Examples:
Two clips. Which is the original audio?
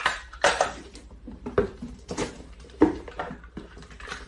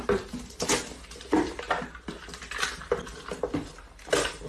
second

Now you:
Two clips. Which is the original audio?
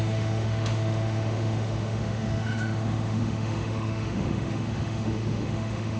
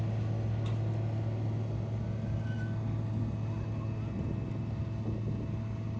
second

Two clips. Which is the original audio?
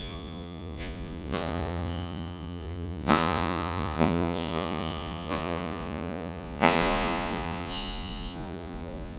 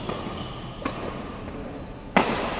second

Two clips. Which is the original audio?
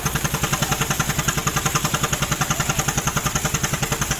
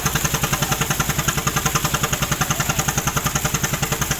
second